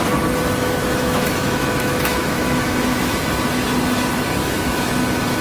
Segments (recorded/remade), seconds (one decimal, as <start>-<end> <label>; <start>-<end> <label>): 0.0-0.8 recorded; 0.8-3.1 remade; 3.1-4.4 recorded; 4.4-4.9 remade; 4.9-5.4 recorded